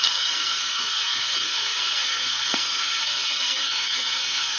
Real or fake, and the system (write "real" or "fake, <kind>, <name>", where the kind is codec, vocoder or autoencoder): fake, codec, SNAC